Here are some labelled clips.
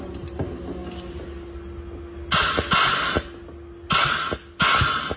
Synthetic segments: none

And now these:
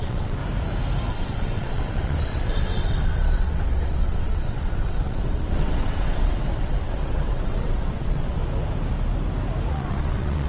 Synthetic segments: 0.0-0.4 (vocoder, WaveNeXt); 1.1-8.4; 9.7-10.5

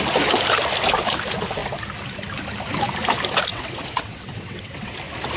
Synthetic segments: 3.5-4.9 (vocoder, WaveNeXt)

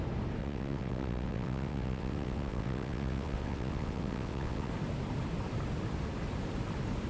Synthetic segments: 0.4-4.7 (vocoder, WaveNeXt)

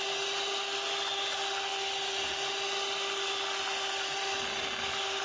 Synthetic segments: none

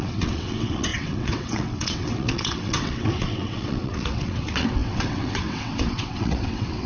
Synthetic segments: 0.0-6.9 (vocoder, WaveNeXt)

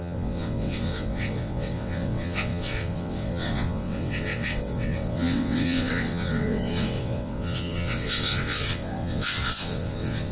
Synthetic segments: 0.0-10.3 (vocoder, WaveNeXt)